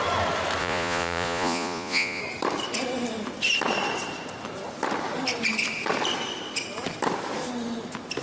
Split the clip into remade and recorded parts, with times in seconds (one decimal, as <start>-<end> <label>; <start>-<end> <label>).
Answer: 0.0-0.6 recorded; 0.6-2.2 remade; 2.2-8.2 recorded

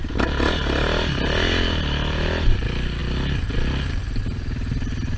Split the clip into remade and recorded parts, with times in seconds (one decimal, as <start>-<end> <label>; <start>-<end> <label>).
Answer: 0.0-5.2 recorded

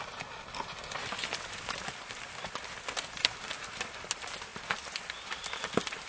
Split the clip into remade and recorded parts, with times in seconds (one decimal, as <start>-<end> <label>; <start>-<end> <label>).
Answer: 0.0-6.1 recorded

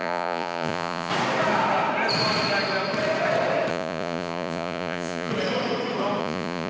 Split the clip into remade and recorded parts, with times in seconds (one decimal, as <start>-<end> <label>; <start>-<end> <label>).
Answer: 0.0-1.1 remade; 1.1-3.7 recorded; 3.7-5.3 remade; 5.3-6.2 recorded; 6.2-6.7 remade